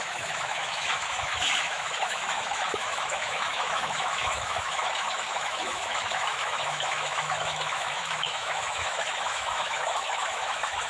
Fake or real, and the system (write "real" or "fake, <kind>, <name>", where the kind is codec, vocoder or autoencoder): fake, autoencoder, DAC-VAE